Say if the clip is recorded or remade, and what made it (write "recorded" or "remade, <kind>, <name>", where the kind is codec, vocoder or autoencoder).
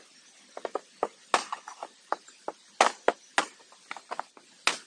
recorded